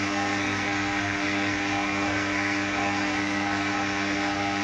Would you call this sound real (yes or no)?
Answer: no